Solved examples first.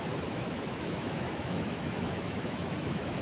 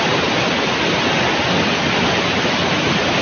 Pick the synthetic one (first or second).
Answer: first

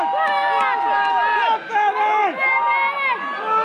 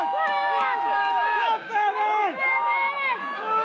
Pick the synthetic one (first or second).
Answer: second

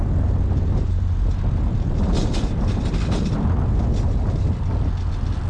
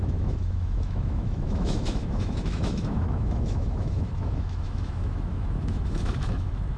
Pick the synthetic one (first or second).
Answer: second